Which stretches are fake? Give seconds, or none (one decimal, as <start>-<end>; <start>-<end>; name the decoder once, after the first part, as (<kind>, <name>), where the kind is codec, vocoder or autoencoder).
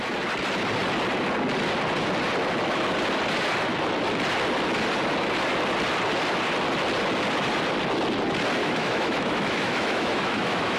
8.6-10.8 (autoencoder, DAC-VAE)